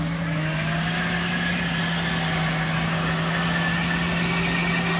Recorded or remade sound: recorded